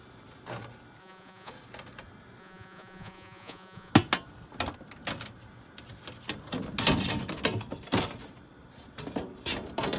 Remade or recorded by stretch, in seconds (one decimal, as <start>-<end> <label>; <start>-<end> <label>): 0.0-1.0 recorded; 1.0-1.5 remade; 1.5-2.4 recorded; 2.4-3.9 remade; 3.9-10.0 recorded